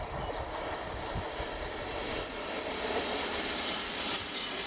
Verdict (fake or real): fake